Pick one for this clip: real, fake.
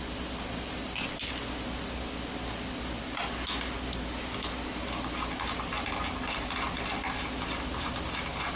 real